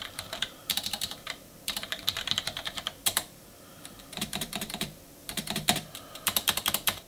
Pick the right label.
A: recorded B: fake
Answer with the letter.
B